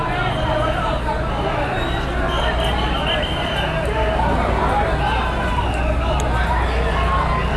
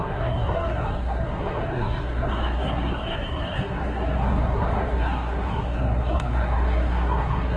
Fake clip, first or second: second